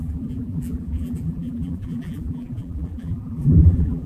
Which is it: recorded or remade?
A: remade